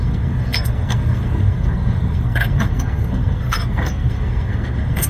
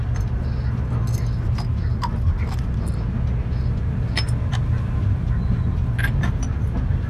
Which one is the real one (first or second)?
second